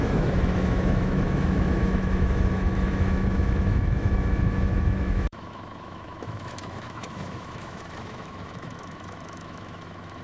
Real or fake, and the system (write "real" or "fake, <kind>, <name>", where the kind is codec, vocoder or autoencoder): fake, autoencoder, DAC-VAE